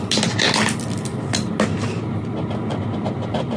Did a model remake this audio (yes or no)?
no